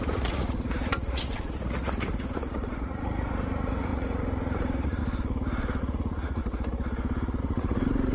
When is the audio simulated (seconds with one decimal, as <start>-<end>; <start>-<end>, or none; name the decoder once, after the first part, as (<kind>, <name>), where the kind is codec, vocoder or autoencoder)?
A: 0.0-5.0 (vocoder, Vocos); 5.8-6.4; 7.4-8.1